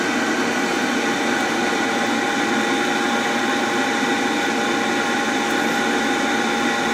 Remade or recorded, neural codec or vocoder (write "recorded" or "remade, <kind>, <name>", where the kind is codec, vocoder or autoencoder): recorded